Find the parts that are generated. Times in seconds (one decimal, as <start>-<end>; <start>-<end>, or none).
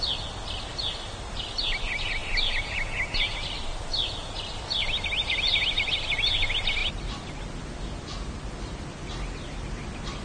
none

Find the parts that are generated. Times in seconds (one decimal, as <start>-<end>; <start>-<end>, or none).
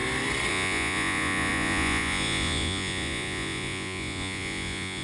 0.5-5.0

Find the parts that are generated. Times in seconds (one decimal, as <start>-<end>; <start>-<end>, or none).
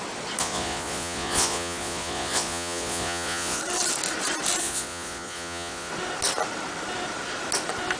0.4-3.6; 4.6-5.9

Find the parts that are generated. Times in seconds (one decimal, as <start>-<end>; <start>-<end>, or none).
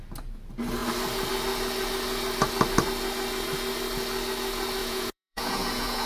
4.8-6.1